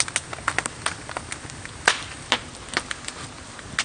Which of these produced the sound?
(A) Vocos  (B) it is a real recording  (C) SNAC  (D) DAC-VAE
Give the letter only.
B